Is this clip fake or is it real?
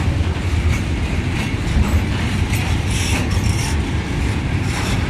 fake